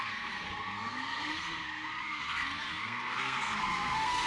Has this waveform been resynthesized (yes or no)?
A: yes